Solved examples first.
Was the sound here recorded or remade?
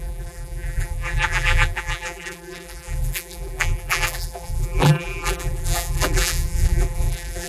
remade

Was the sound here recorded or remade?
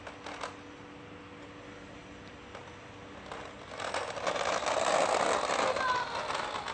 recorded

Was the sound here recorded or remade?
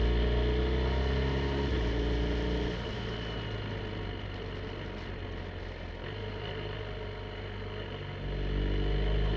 recorded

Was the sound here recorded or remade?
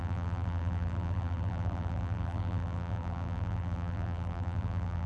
remade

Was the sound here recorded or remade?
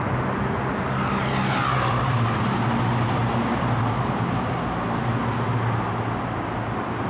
recorded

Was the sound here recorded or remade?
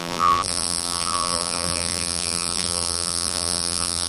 remade